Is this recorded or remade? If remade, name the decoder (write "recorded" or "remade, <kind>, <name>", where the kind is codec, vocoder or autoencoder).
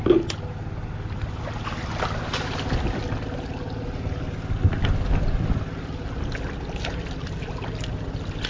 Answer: recorded